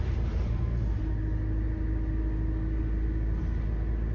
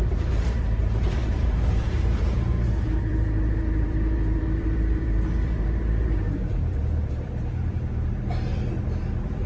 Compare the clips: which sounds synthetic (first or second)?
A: second